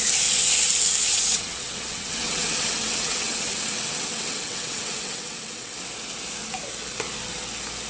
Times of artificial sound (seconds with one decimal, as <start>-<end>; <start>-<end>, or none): 1.0-5.7

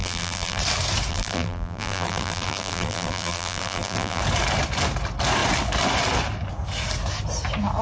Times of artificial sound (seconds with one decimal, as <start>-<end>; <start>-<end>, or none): 0.0-0.6; 1.1-4.2

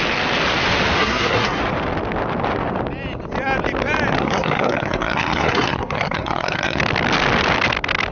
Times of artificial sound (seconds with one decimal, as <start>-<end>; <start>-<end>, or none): 1.0-1.6; 4.2-6.8

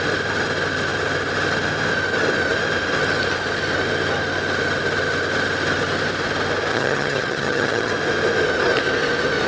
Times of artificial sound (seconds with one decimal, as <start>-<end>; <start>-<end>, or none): 6.7-7.9

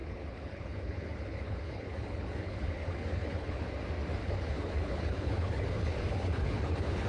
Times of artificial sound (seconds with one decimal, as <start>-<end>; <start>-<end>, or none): 0.0-3.6; 4.2-7.1

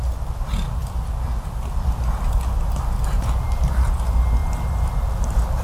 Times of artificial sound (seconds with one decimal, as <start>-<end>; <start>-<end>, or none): none